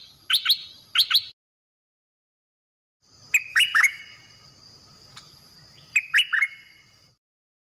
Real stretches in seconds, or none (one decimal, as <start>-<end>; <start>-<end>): 0.0-3.5; 4.0-7.8